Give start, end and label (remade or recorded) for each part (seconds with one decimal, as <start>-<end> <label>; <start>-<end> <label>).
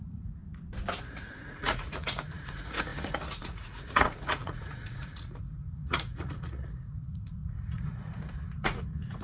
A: 0.0-0.4 remade; 0.4-1.0 recorded; 1.0-9.2 remade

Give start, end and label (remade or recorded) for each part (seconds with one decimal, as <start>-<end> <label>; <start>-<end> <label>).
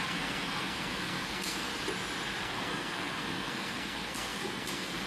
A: 0.0-1.7 remade; 1.7-2.4 recorded; 2.4-5.1 remade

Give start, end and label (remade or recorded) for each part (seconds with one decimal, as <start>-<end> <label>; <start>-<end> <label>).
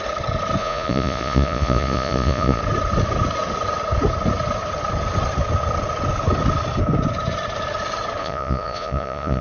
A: 0.0-0.6 recorded; 0.6-2.6 remade; 2.6-8.2 recorded; 8.2-9.4 remade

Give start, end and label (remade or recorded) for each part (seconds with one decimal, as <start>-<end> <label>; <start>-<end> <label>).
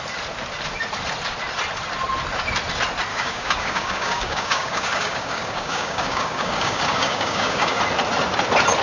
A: 0.0-3.1 recorded; 3.1-7.8 remade; 7.8-8.8 recorded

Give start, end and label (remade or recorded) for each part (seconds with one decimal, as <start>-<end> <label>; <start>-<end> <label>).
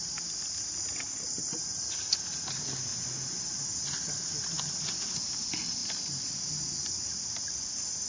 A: 0.0-0.9 recorded; 0.9-1.4 remade; 1.4-8.1 recorded